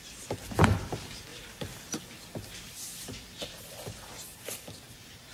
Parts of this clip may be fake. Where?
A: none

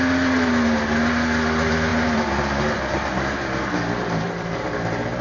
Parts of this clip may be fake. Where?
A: 1.9-5.2 (vocoder, BigVGAN v2)